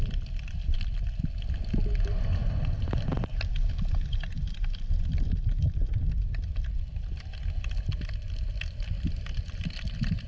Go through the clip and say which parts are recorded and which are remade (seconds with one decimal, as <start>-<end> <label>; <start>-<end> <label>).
0.0-2.4 recorded; 2.4-3.2 remade; 3.2-10.3 recorded